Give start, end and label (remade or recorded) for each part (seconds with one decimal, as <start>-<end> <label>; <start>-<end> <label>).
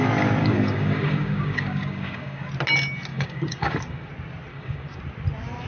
0.0-0.4 recorded; 0.4-2.5 remade; 2.5-3.1 recorded; 3.1-4.1 remade; 4.1-4.5 recorded; 4.5-5.0 remade; 5.0-5.7 recorded